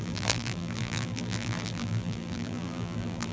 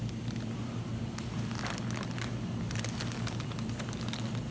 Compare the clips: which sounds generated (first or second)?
first